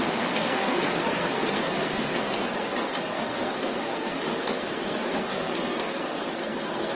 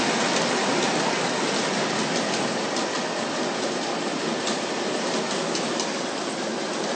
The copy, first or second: first